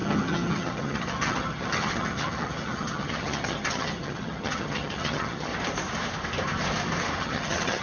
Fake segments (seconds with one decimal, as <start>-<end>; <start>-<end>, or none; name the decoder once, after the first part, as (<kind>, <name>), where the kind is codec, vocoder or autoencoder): 0.0-5.5 (vocoder, HiFi-GAN); 7.2-7.8